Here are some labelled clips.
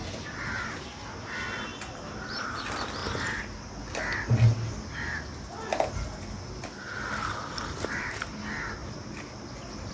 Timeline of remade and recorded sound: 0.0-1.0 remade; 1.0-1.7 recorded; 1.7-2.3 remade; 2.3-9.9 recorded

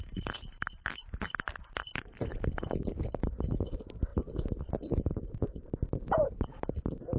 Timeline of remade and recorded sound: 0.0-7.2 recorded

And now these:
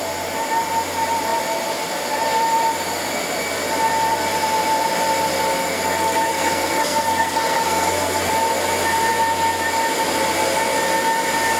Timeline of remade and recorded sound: 0.0-5.6 recorded; 5.6-8.3 remade; 8.3-11.6 recorded